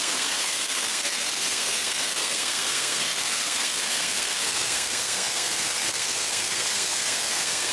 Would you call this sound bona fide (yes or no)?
no